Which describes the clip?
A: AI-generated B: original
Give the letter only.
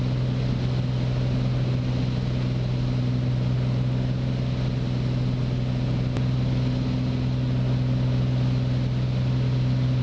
B